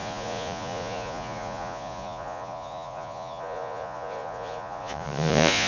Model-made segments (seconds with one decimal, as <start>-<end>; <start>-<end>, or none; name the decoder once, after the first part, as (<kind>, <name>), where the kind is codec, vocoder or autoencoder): 0.0-5.7 (vocoder, Vocos)